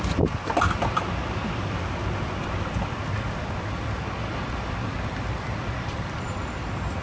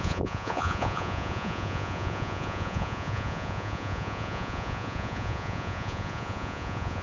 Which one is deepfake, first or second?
second